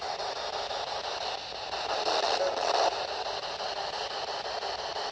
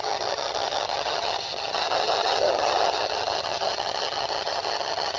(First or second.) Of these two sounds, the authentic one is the first